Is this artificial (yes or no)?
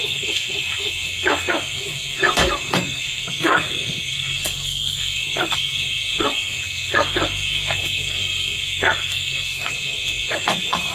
yes